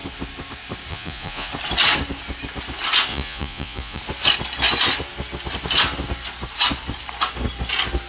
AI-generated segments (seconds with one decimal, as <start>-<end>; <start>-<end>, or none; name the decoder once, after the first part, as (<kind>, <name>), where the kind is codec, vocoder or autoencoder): 0.9-1.5 (vocoder, Vocos); 3.1-4.0